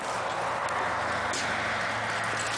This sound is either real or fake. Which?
real